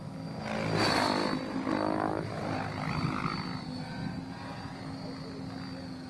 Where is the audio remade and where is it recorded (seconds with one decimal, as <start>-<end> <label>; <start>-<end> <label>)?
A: 0.0-6.1 recorded